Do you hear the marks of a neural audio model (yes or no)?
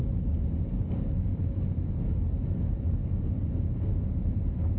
no